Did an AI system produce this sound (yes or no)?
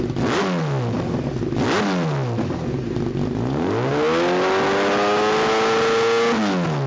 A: no